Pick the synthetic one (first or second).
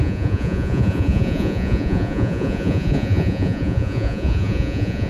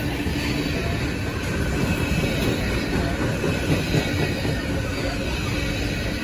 first